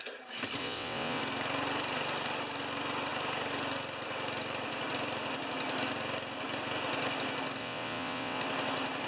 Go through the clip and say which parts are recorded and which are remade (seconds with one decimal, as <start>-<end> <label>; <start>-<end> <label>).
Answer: 0.0-0.6 recorded; 0.6-1.2 remade; 1.2-7.6 recorded; 7.6-8.4 remade; 8.4-9.1 recorded